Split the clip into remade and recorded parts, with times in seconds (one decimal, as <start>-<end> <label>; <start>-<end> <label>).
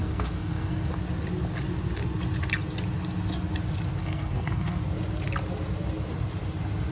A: 0.0-0.9 remade; 0.9-4.0 recorded; 4.0-4.8 remade; 4.8-6.9 recorded